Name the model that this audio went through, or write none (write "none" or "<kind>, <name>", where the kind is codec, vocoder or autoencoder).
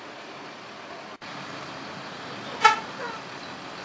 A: none